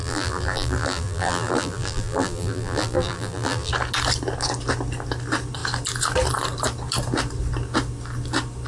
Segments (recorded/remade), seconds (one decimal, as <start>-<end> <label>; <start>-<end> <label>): 0.0-3.7 remade; 3.7-8.7 recorded